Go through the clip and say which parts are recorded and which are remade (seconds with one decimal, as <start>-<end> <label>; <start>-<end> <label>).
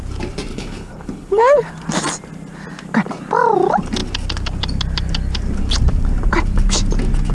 0.0-0.5 recorded; 0.5-1.7 remade; 1.7-7.3 recorded